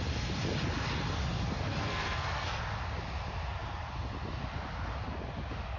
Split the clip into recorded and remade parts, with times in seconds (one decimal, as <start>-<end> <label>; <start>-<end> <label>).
0.0-1.7 recorded; 1.7-2.6 remade; 2.6-5.8 recorded